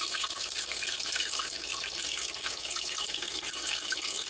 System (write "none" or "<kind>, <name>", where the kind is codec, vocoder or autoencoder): codec, SNAC